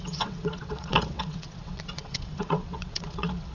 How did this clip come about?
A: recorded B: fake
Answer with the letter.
B